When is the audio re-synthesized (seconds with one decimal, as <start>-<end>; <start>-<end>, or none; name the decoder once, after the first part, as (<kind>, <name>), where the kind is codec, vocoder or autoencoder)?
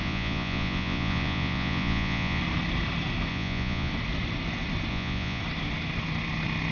0.0-2.4 (vocoder, Vocos); 3.3-3.9; 4.9-5.4